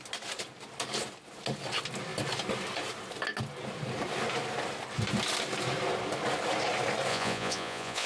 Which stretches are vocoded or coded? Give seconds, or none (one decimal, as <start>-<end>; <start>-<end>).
7.1-8.1